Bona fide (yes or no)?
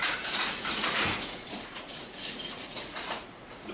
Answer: no